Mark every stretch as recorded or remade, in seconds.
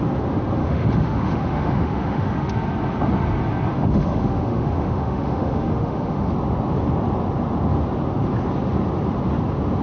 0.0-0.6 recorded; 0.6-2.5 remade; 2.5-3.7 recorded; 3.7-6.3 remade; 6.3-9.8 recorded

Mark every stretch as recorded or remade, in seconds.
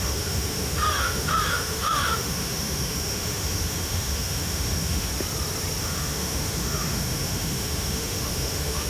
0.0-5.1 remade; 5.1-5.8 recorded; 5.8-8.9 remade